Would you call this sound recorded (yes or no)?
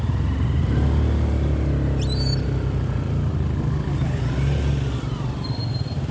yes